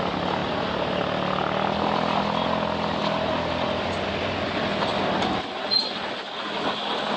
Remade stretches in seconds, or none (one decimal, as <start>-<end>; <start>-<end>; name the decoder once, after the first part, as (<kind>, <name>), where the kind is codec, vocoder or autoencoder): none